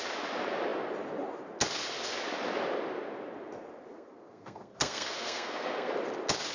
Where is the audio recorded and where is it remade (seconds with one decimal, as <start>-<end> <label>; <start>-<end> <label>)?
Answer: 0.0-3.9 recorded; 3.9-5.9 remade; 5.9-6.5 recorded